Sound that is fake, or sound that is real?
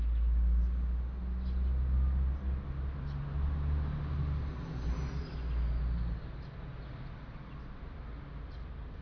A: real